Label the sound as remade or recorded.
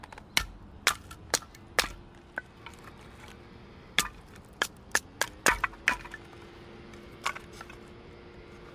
recorded